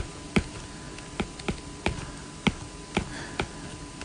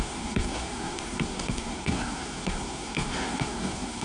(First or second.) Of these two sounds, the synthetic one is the second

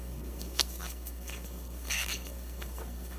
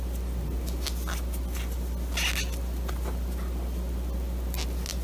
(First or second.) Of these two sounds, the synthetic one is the first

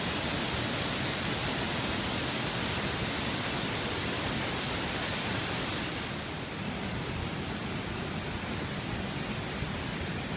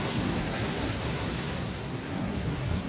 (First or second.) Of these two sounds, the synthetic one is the second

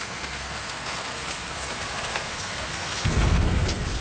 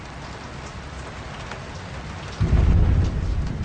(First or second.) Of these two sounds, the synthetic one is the first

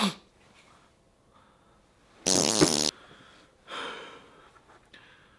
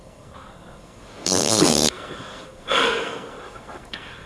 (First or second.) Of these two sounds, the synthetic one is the second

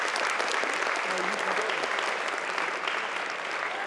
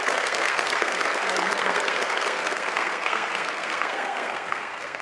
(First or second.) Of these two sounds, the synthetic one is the second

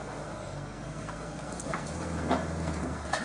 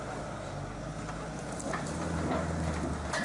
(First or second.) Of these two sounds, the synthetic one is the first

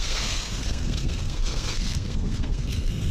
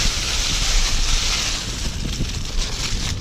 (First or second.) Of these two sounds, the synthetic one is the first